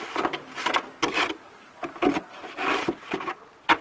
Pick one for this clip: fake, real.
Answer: real